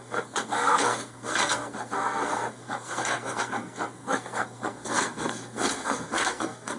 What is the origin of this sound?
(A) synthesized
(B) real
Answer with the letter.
A